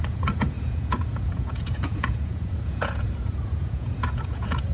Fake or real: fake